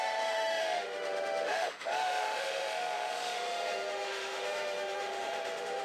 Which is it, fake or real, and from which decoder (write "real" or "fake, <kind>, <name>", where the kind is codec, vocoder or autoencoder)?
fake, autoencoder, DAC-VAE